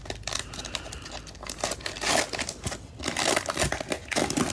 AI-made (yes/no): no